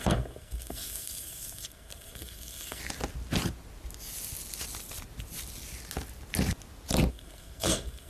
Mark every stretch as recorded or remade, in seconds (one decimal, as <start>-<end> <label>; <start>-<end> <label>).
0.0-2.8 remade; 2.8-7.1 recorded; 7.1-8.1 remade